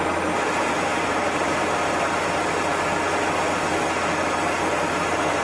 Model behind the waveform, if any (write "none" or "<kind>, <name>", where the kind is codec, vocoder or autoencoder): none